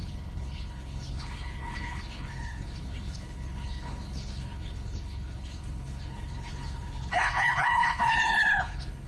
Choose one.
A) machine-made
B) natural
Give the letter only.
A